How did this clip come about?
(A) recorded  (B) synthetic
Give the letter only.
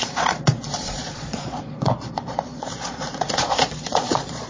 B